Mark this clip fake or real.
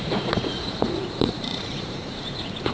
fake